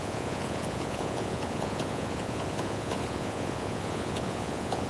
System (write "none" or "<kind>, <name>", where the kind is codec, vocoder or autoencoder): vocoder, Vocos